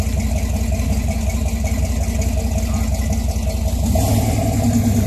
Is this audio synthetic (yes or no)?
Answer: no